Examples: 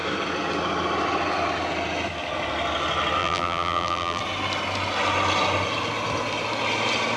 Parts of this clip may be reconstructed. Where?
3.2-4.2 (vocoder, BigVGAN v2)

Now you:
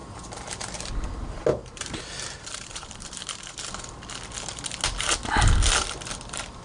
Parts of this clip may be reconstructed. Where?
0.0-0.9 (vocoder, BigVGAN v2); 1.5-3.7

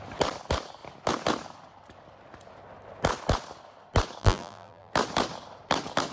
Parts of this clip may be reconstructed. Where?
4.2-4.9 (vocoder, BigVGAN v2)